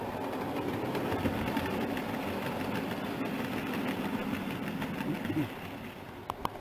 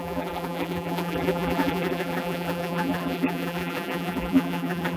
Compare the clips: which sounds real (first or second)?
first